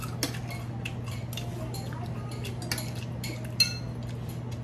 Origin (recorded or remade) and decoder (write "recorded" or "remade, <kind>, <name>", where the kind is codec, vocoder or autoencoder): recorded